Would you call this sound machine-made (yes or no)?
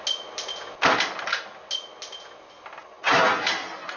no